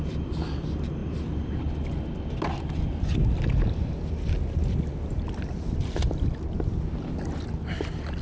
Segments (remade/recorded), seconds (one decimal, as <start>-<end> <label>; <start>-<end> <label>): 0.0-8.2 recorded

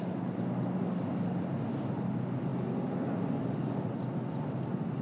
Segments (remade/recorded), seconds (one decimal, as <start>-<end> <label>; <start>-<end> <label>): 0.0-5.0 recorded

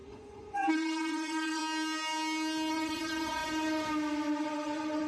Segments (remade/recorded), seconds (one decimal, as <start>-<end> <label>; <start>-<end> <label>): 0.0-1.6 remade; 1.6-2.7 recorded; 2.7-3.4 remade; 3.4-4.4 recorded; 4.4-5.1 remade

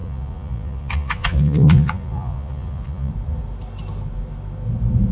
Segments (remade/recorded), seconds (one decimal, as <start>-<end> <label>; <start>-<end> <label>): 0.0-3.1 remade; 3.1-5.1 recorded

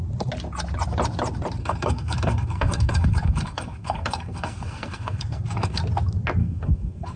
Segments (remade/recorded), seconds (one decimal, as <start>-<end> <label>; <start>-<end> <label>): 0.0-1.6 recorded; 1.6-5.8 remade; 5.8-6.4 recorded; 6.4-7.2 remade

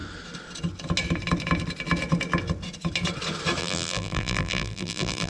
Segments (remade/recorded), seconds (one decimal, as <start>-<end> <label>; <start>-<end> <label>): 0.0-3.6 recorded; 3.6-5.3 remade

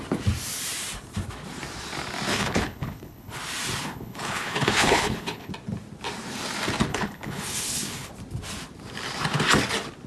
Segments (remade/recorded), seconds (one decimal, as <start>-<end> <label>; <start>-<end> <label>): 0.0-2.3 recorded; 2.3-3.4 remade; 3.4-3.8 recorded; 3.8-5.5 remade; 5.5-6.9 recorded; 6.9-8.1 remade; 8.1-10.1 recorded

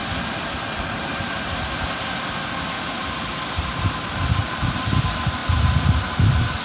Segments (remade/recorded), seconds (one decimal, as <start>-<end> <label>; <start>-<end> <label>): 0.0-3.1 recorded; 3.1-5.4 remade; 5.4-6.6 recorded